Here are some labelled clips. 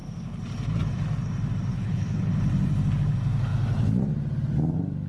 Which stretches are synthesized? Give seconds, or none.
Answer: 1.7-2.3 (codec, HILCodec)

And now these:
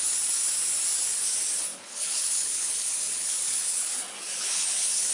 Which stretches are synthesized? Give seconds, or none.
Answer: 1.7-5.1 (codec, HILCodec)

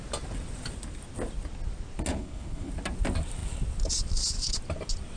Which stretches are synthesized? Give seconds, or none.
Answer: 2.1-2.7 (codec, HILCodec)